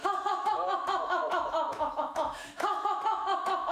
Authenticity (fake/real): fake